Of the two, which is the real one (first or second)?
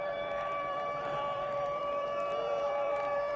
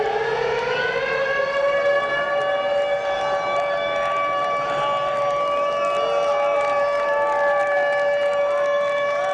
second